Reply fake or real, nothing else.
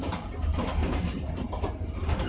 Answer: fake